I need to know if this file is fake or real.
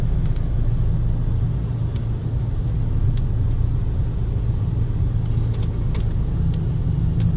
real